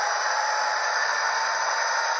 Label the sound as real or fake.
real